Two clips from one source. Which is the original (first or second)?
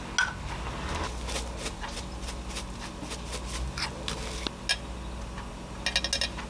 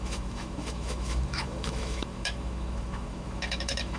first